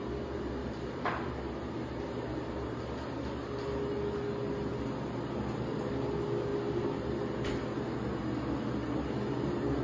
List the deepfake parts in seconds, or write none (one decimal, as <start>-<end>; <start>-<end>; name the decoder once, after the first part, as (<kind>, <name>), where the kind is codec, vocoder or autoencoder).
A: 0.6-2.8 (vocoder, BigVGAN v2)